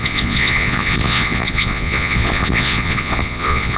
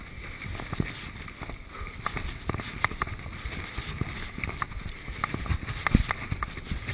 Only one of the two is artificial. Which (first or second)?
first